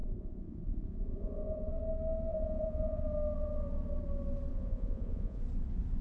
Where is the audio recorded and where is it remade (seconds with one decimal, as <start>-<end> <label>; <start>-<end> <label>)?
0.0-1.7 remade; 1.7-2.3 recorded; 2.3-3.0 remade; 3.0-4.5 recorded; 4.5-5.4 remade; 5.4-6.0 recorded